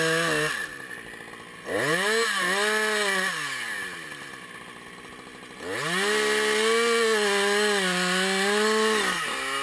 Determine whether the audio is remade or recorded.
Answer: recorded